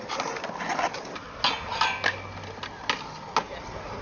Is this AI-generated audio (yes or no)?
no